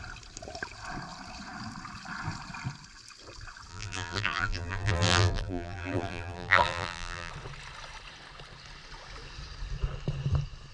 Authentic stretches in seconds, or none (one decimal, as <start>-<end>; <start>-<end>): 0.0-3.7; 7.3-10.7